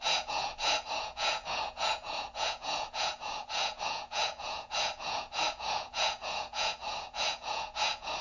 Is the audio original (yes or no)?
no